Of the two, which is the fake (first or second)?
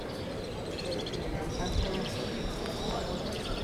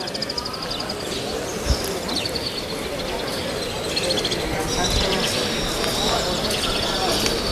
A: first